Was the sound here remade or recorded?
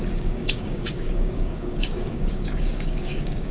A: remade